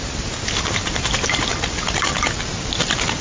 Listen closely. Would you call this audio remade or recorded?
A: recorded